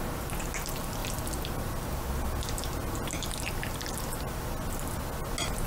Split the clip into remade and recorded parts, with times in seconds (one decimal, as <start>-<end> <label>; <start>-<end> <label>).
0.0-5.7 recorded